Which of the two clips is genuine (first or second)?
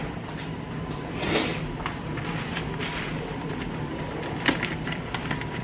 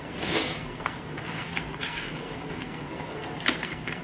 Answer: first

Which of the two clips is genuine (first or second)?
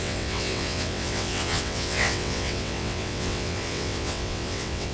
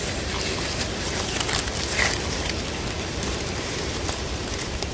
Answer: second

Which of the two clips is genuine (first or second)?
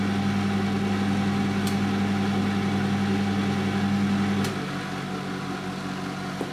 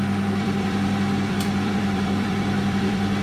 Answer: first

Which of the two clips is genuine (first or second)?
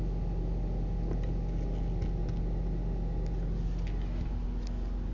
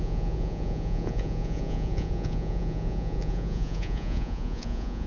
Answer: first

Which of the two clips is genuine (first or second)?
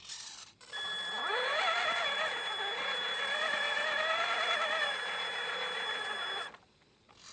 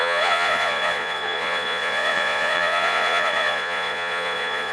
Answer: first